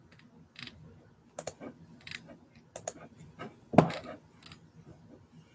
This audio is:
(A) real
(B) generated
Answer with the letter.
A